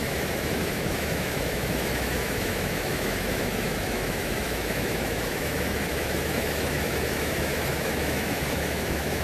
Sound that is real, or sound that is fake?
fake